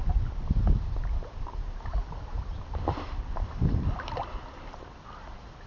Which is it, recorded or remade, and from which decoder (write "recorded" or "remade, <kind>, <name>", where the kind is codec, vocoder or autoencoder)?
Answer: recorded